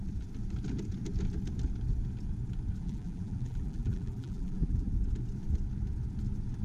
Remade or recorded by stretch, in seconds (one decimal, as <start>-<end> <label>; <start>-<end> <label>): 0.0-2.8 recorded; 2.8-4.9 remade; 4.9-6.6 recorded